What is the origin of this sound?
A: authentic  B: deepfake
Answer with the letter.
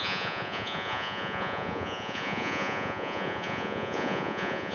B